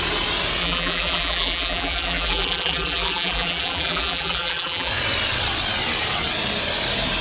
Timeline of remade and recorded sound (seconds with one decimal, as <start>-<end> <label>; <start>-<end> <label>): 0.0-0.6 recorded; 0.6-4.9 remade; 4.9-7.2 recorded